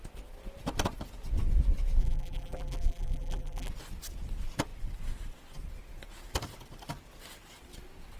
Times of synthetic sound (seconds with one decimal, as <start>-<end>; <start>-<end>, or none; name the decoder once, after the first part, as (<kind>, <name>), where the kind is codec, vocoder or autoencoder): 2.0-3.7 (vocoder, BigVGAN v2)